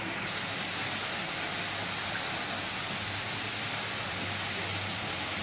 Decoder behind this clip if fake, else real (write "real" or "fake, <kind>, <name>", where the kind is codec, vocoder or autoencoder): real